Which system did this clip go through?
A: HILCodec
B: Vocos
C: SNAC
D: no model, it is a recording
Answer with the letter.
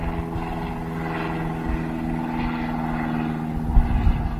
D